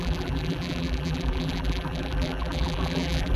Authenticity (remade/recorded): remade